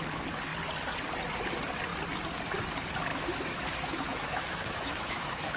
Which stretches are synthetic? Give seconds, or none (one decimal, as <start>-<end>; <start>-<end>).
3.1-5.6